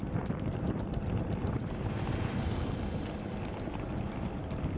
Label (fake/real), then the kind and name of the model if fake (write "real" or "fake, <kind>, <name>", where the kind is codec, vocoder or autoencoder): real